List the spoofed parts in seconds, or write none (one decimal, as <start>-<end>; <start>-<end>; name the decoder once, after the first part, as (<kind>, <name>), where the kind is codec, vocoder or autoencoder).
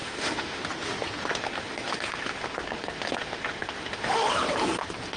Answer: 0.0-0.6 (autoencoder, DAC-VAE); 1.2-4.3